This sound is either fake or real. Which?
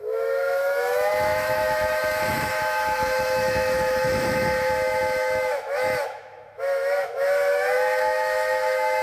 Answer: fake